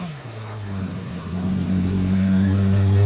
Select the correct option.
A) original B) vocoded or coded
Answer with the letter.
B